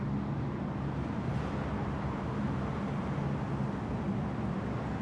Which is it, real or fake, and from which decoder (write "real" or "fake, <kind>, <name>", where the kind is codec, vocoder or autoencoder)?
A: real